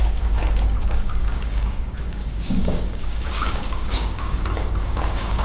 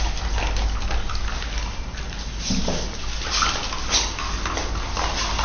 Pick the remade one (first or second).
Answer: first